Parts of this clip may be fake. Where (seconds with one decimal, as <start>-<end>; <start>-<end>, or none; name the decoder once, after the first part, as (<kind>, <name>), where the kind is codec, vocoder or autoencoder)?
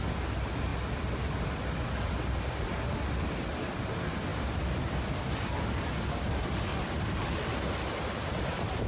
4.3-5.6 (vocoder, BigVGAN v2); 6.7-7.2